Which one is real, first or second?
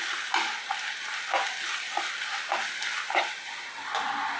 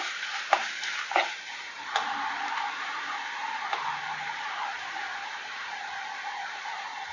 first